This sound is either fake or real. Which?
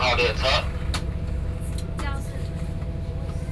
real